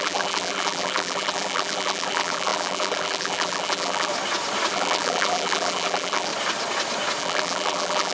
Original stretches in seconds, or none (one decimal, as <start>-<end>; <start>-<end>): 4.1-4.7; 6.3-7.2